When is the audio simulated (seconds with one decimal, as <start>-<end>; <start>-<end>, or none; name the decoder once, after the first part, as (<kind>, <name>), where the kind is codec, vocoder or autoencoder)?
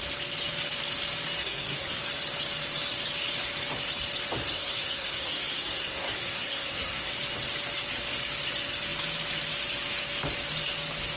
1.4-2.0 (codec, SNAC); 4.5-7.1